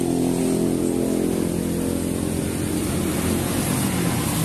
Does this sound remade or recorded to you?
recorded